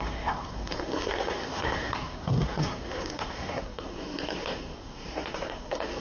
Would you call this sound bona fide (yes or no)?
no